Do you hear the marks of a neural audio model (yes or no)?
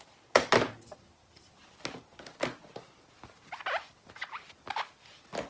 no